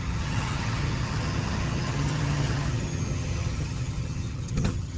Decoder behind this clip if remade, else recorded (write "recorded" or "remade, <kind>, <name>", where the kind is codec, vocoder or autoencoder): remade, vocoder, HiFi-GAN